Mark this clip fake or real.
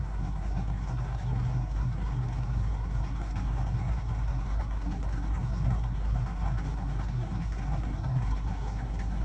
fake